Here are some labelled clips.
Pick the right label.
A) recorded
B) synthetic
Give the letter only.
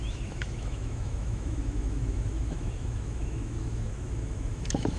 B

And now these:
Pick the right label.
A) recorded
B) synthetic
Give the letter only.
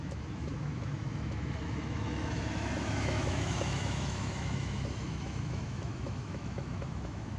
B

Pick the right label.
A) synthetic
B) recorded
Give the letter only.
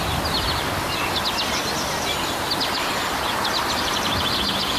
B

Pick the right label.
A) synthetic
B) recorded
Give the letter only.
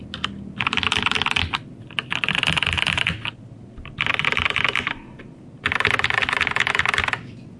B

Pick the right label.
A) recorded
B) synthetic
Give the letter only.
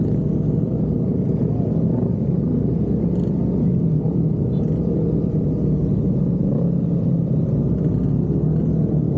A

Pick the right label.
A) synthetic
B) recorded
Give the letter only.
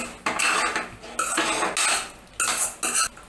B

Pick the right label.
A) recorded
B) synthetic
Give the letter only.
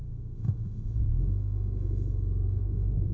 B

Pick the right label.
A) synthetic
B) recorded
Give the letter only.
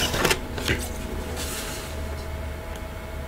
B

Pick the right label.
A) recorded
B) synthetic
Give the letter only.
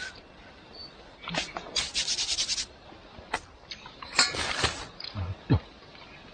A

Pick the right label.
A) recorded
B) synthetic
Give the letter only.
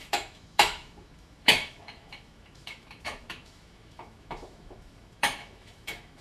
B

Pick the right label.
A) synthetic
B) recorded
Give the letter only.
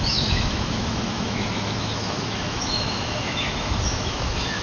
A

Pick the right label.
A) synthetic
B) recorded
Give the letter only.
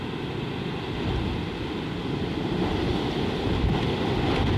B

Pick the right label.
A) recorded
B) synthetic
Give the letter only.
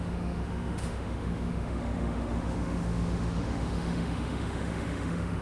B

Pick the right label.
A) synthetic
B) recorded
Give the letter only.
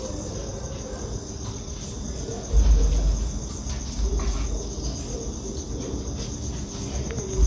B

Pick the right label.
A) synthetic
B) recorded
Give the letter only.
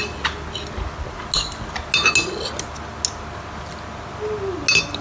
B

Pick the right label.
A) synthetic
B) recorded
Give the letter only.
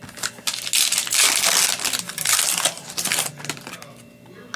B